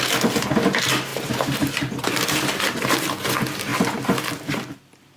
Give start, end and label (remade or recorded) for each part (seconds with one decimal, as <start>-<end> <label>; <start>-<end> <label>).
0.0-1.1 recorded; 1.1-2.6 remade; 2.6-5.2 recorded